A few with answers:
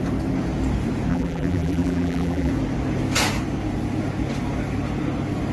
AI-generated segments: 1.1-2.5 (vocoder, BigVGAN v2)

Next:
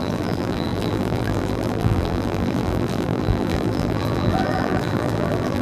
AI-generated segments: 0.0-5.6 (vocoder, BigVGAN v2)

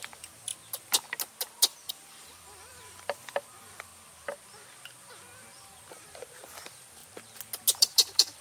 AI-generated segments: 0.0-0.5 (vocoder, BigVGAN v2); 1.9-3.9; 5.9-7.0; 7.8-8.4

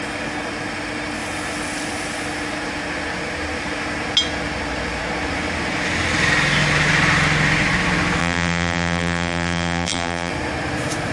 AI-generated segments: 8.2-10.3 (vocoder, BigVGAN v2)

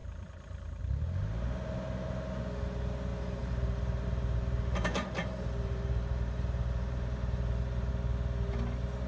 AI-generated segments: 0.0-0.8 (vocoder, BigVGAN v2); 3.1-7.9

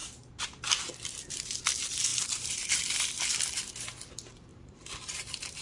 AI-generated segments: 0.0-0.6 (vocoder, BigVGAN v2); 2.1-2.7; 4.5-5.6

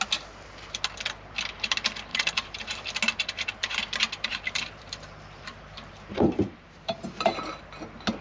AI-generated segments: 2.1-2.6 (vocoder, BigVGAN v2); 4.3-7.6

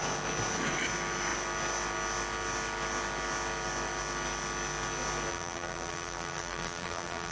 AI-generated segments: 5.3-7.3 (vocoder, BigVGAN v2)